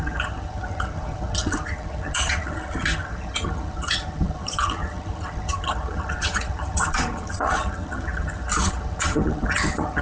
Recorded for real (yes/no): no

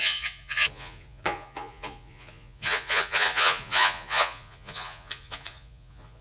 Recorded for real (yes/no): no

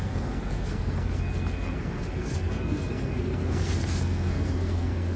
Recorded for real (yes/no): no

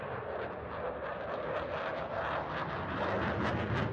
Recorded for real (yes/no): yes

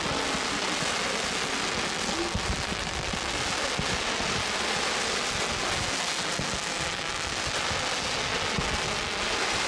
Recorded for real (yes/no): yes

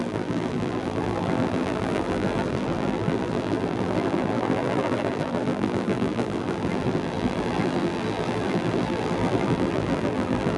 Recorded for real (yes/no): no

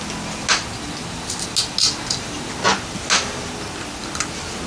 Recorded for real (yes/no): yes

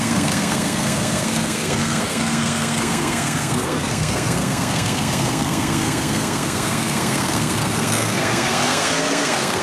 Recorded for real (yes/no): no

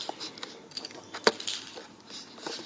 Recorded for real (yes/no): yes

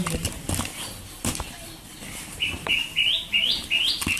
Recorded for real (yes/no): no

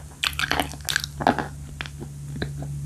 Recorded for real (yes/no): yes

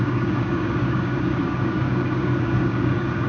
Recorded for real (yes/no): no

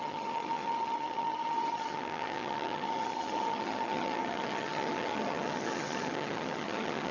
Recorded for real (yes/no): no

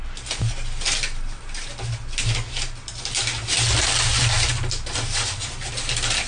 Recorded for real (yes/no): yes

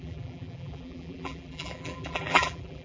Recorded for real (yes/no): no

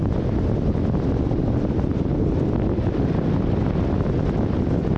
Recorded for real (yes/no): yes